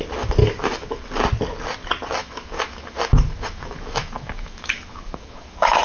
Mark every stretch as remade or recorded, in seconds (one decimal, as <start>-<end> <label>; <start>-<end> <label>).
0.0-0.4 recorded; 0.4-1.1 remade; 1.1-2.2 recorded; 2.2-5.8 remade